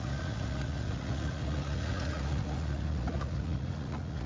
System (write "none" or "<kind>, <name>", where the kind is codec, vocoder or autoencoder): vocoder, Vocos